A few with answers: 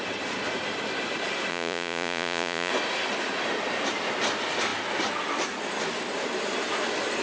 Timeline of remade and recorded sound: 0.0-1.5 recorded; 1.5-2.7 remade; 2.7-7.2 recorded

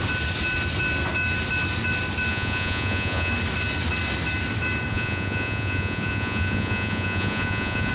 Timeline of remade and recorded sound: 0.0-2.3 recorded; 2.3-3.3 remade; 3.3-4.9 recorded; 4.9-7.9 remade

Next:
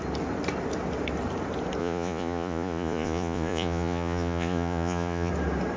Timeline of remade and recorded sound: 0.0-1.8 recorded; 1.8-5.3 remade; 5.3-5.8 recorded